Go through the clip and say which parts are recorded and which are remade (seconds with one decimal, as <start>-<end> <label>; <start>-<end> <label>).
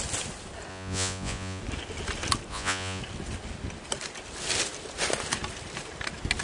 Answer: 0.0-0.7 recorded; 0.7-1.6 remade; 1.6-2.5 recorded; 2.5-3.0 remade; 3.0-6.4 recorded